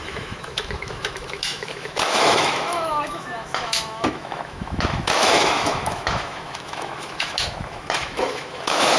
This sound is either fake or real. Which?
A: fake